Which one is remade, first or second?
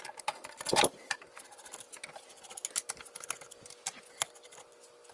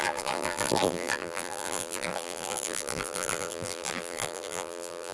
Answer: second